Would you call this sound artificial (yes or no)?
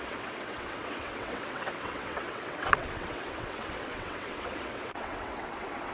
yes